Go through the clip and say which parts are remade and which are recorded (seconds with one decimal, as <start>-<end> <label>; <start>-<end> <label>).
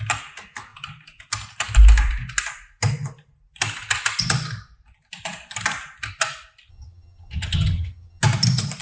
0.0-6.7 recorded; 6.7-8.2 remade; 8.2-8.8 recorded